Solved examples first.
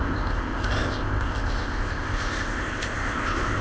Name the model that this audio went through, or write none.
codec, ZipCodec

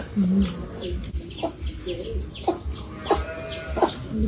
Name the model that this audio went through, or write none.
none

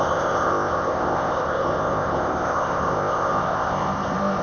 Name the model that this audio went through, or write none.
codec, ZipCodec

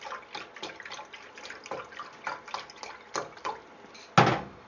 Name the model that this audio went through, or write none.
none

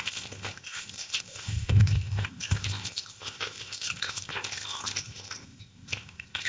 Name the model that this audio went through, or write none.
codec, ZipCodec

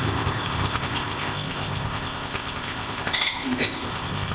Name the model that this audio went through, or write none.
codec, ZipCodec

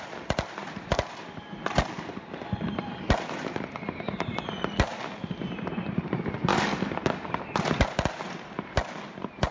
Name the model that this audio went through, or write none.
none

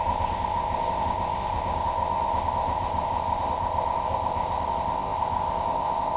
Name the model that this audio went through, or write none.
codec, ZipCodec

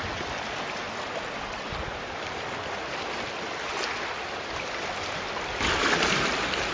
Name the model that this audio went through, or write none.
none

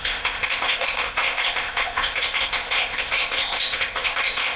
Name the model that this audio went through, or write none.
codec, ZipCodec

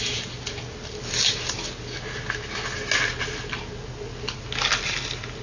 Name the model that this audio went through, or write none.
none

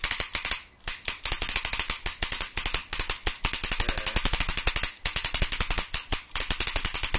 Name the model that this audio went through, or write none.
none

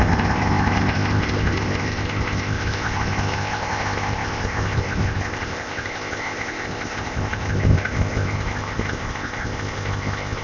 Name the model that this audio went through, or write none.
codec, ZipCodec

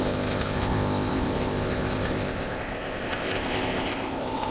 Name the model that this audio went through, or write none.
codec, ZipCodec